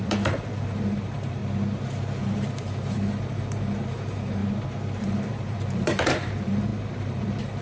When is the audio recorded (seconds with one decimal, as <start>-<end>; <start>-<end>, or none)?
1.4-2.3; 4.4-5.0